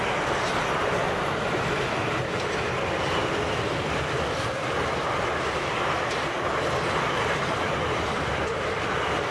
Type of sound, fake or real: real